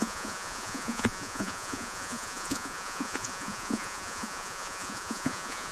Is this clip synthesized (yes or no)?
yes